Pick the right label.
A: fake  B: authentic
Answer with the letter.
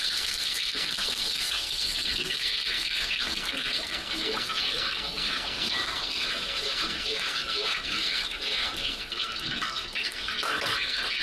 A